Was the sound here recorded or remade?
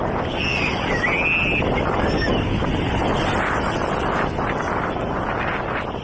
recorded